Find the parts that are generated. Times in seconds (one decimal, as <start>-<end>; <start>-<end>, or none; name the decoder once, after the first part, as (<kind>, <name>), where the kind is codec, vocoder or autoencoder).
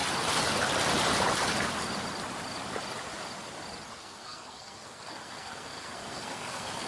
3.9-6.9 (codec, SNAC)